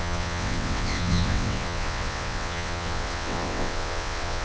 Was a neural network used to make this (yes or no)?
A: yes